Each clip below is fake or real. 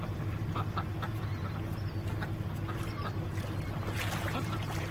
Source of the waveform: real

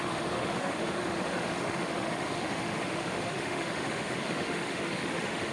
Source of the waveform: fake